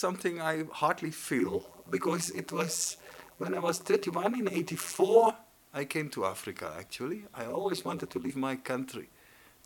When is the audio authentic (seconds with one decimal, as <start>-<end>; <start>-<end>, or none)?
0.0-1.4; 5.3-7.5; 8.3-9.7